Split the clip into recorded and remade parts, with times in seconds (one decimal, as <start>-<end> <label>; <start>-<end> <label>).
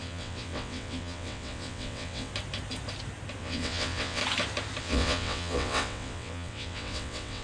0.0-2.3 remade; 2.3-3.4 recorded; 3.4-4.2 remade; 4.2-4.8 recorded; 4.8-7.4 remade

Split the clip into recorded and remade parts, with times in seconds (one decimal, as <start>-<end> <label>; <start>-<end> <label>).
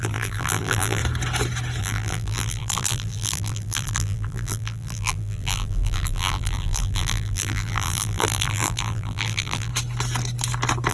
0.0-1.0 remade; 1.0-1.8 recorded; 1.8-9.7 remade; 9.7-10.9 recorded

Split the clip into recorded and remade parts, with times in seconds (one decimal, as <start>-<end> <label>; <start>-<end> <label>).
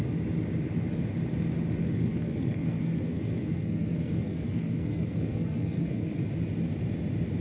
0.0-1.8 recorded; 1.8-6.2 remade; 6.2-7.4 recorded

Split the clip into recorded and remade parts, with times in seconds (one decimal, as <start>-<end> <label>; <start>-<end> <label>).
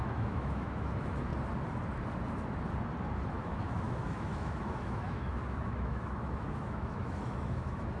0.0-1.3 remade; 1.3-3.3 recorded; 3.3-8.0 remade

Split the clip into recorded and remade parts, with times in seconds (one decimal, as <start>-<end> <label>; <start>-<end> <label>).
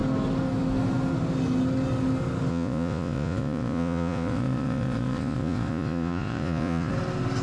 0.0-2.5 recorded; 2.5-6.9 remade; 6.9-7.4 recorded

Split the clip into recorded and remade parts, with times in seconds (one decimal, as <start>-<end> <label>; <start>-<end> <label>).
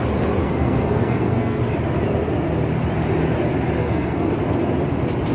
0.0-0.4 recorded; 0.4-1.6 remade; 1.6-3.8 recorded; 3.8-4.3 remade; 4.3-5.3 recorded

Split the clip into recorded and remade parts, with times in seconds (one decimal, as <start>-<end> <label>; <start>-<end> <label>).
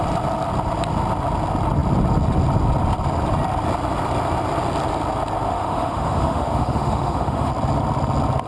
0.0-5.5 recorded; 5.5-7.5 remade; 7.5-8.5 recorded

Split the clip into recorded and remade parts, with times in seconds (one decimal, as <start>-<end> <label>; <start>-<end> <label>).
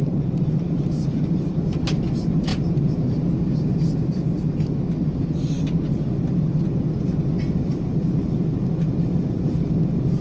0.0-2.5 remade; 2.5-7.6 recorded; 7.6-10.2 remade